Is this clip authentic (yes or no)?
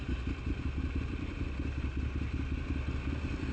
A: yes